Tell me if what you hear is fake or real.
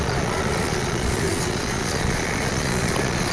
fake